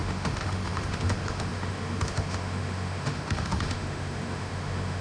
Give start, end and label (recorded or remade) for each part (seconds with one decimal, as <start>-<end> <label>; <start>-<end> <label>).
0.0-5.0 remade